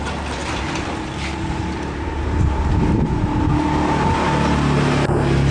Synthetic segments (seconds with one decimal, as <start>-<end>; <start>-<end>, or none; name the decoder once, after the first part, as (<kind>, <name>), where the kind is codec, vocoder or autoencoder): 0.4-3.5 (vocoder, BigVGAN v2)